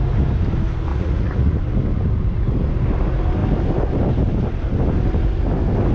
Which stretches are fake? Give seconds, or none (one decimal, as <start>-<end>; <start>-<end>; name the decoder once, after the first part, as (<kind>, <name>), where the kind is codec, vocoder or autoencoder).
0.9-1.6 (vocoder, Vocos)